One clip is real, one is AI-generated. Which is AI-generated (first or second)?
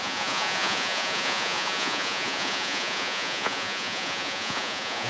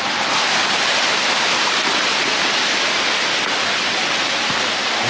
first